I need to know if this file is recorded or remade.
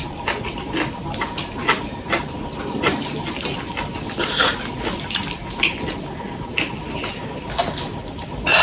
recorded